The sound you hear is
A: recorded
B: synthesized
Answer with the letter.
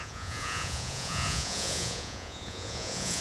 B